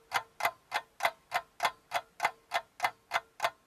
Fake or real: real